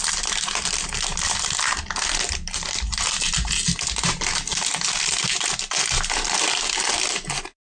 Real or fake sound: real